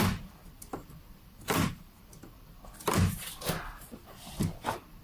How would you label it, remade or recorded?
remade